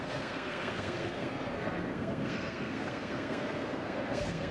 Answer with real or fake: fake